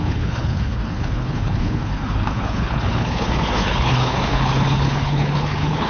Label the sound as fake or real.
fake